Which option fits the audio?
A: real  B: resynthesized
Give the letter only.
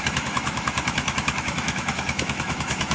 B